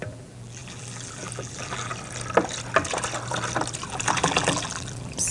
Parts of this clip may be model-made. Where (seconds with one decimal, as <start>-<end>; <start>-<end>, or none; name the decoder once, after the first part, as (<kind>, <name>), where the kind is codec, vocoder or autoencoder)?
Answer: 0.0-1.9 (vocoder, BigVGAN v2); 3.9-5.3